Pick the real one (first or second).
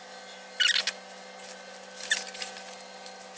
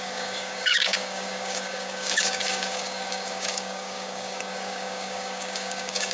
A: first